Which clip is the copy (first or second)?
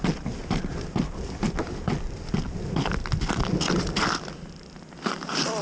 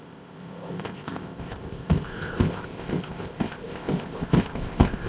second